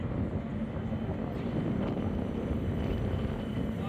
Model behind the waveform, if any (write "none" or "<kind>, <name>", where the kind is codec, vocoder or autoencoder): none